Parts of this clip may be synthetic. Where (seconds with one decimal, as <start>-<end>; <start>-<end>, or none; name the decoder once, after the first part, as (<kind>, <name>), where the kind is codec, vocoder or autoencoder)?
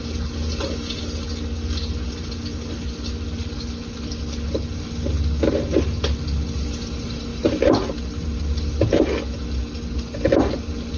none